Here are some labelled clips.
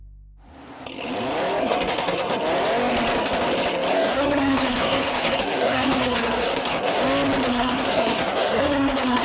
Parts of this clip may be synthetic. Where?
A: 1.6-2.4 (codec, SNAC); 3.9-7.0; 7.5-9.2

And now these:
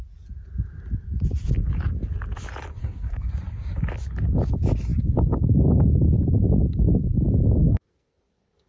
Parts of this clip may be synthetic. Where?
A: 2.8-3.3 (codec, SNAC); 7.6-8.7

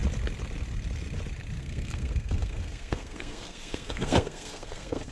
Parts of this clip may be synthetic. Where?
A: 1.6-5.1 (codec, SNAC)

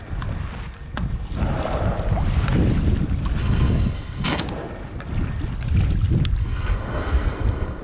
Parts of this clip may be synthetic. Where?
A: 3.4-4.4 (codec, SNAC); 6.4-7.8

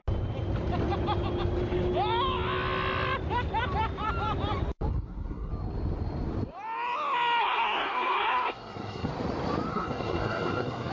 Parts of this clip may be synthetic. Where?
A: 4.9-5.5 (codec, SNAC); 7.4-9.1; 9.7-10.9